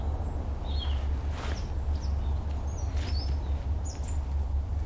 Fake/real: real